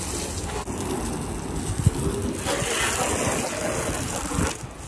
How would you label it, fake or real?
real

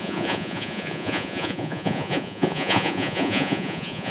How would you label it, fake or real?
fake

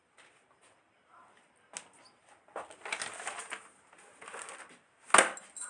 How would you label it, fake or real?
real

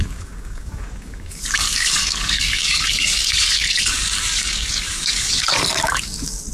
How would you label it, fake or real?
fake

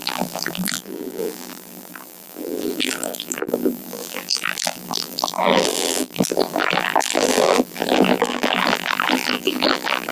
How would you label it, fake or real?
fake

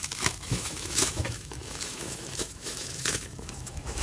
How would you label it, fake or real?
fake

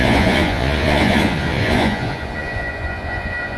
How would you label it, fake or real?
fake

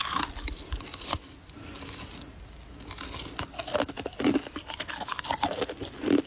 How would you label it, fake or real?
real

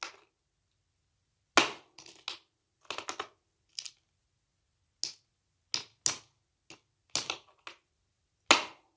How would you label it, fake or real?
real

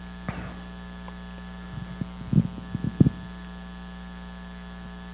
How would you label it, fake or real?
real